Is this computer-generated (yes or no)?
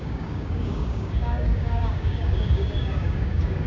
yes